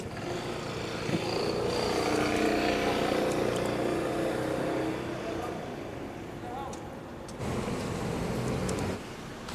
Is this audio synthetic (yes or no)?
no